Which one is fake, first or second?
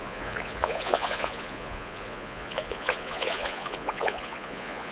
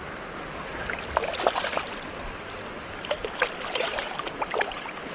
first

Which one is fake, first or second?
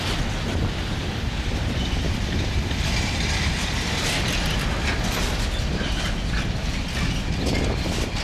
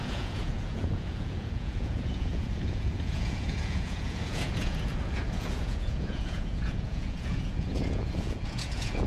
second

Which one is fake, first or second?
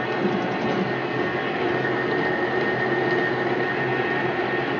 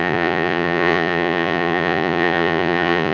second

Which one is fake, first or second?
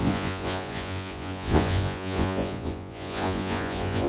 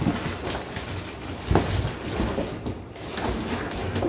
first